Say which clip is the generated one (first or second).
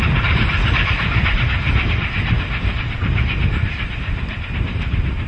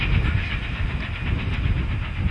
first